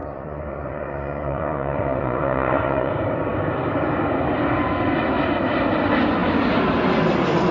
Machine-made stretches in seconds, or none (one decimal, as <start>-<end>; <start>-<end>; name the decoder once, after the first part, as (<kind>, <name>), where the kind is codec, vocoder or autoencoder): 0.0-2.9 (vocoder, Vocos)